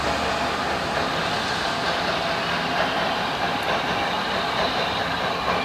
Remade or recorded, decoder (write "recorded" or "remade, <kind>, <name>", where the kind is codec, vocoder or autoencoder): recorded